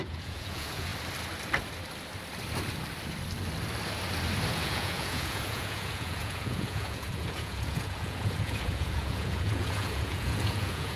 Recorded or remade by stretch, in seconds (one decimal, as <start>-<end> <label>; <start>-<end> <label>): 0.0-0.9 remade; 0.9-4.5 recorded; 4.5-11.0 remade